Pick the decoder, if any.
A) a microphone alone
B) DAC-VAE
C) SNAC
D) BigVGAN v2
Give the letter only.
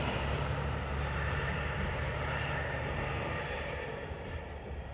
D